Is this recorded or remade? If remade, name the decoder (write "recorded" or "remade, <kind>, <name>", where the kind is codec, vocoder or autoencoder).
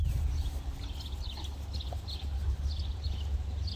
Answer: recorded